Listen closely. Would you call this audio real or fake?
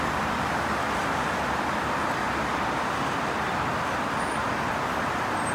real